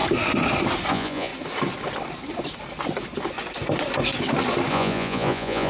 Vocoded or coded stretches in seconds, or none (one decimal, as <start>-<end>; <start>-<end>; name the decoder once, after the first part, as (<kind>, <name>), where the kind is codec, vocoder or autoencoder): 0.9-1.3 (vocoder, Vocos); 4.7-5.7